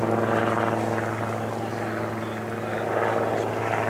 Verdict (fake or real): real